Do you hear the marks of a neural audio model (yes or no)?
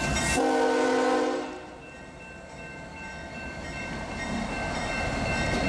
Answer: no